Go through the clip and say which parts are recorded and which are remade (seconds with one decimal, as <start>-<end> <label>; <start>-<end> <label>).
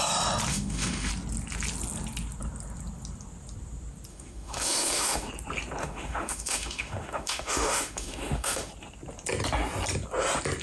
0.0-0.5 recorded; 0.5-1.1 remade; 1.1-4.1 recorded; 4.1-5.3 remade; 5.3-5.8 recorded; 5.8-8.7 remade; 8.7-10.6 recorded